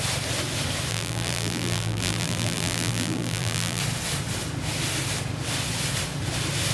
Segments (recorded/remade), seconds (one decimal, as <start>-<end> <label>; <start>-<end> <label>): 0.0-0.9 recorded; 0.9-3.8 remade; 3.8-6.7 recorded